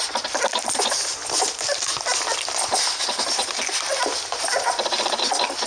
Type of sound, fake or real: real